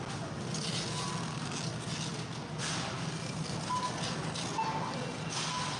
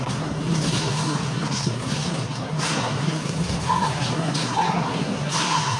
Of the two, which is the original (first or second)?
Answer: first